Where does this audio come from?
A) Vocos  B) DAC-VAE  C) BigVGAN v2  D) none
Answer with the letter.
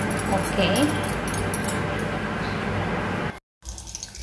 D